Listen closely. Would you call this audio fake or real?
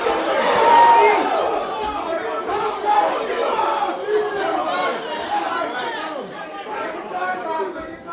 fake